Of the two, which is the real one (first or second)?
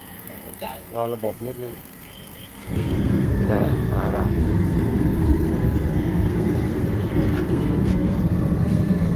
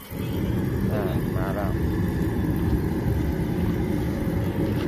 second